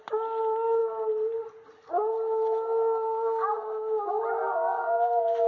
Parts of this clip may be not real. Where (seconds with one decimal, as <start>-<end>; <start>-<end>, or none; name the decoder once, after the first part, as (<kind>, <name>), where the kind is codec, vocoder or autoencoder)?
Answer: none